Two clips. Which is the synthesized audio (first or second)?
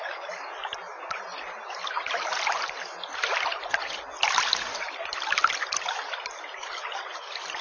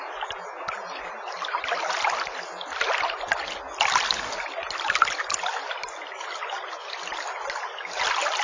first